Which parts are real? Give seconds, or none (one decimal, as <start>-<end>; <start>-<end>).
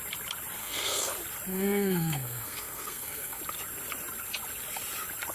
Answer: 0.0-0.6; 1.1-1.5; 3.4-5.3